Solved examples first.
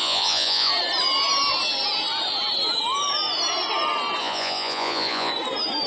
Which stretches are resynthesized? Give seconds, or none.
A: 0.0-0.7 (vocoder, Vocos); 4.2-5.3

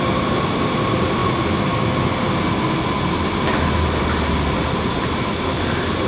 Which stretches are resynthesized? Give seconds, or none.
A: none

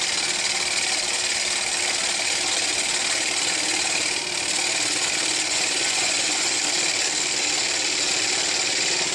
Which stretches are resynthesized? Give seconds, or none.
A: 5.5-6.6 (vocoder, Vocos)

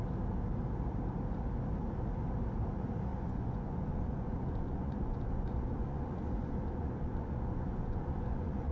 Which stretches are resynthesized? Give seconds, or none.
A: 3.1-8.7 (vocoder, Vocos)

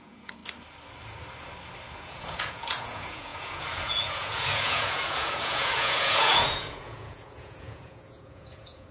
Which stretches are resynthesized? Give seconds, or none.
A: 0.0-0.4 (vocoder, Vocos); 1.9-8.9

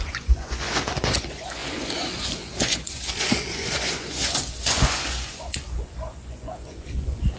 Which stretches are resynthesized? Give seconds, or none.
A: 0.0-7.4 (vocoder, Vocos)

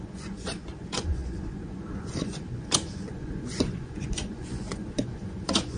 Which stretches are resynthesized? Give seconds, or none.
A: 0.0-5.8 (vocoder, Vocos)

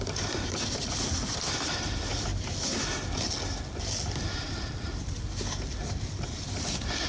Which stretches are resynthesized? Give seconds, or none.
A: none